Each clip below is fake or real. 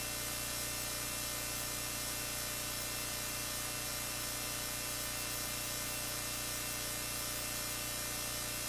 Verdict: real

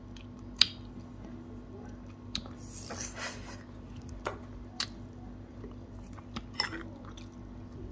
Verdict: real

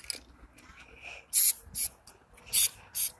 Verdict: real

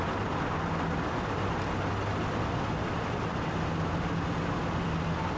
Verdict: real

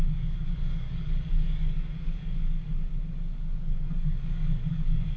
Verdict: fake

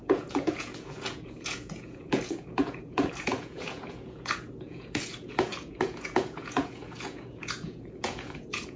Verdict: fake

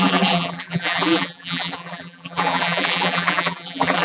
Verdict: fake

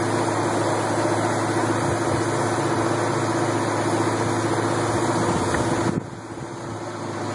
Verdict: real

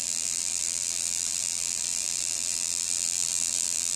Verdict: fake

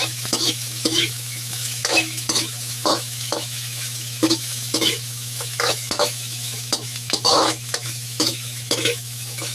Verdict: fake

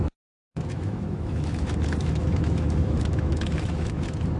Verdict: fake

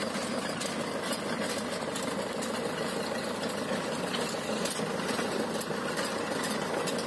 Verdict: real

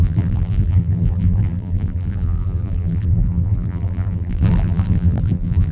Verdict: fake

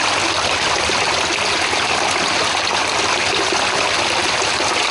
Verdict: real